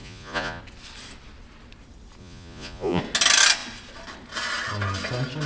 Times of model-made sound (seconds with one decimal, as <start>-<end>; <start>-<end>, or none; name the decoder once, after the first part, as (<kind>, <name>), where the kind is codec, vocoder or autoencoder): 0.0-0.6 (vocoder, Vocos); 2.2-3.0